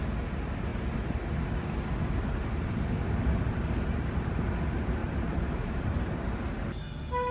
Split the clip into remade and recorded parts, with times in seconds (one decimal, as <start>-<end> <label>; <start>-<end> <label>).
0.0-5.0 recorded; 5.0-6.6 remade; 6.6-7.3 recorded